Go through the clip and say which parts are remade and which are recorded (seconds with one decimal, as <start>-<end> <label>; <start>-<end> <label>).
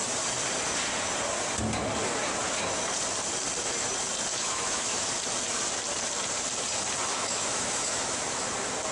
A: 0.0-4.3 recorded; 4.3-5.1 remade; 5.1-7.1 recorded; 7.1-8.4 remade; 8.4-8.9 recorded